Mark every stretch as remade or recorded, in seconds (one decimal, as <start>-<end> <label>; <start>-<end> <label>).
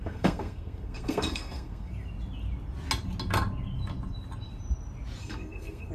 0.0-1.9 remade; 1.9-5.2 recorded; 5.2-5.9 remade